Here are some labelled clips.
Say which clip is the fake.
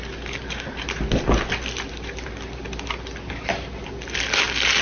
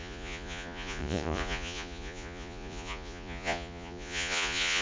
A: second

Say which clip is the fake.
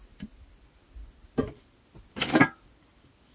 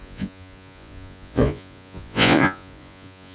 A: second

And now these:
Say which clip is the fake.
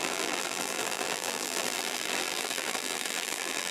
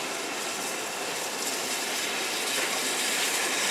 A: first